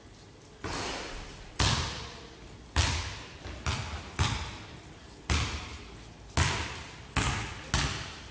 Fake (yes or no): no